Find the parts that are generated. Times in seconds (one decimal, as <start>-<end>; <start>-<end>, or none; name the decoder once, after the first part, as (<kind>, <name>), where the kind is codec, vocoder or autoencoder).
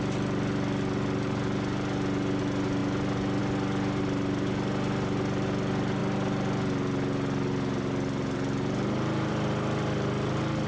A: none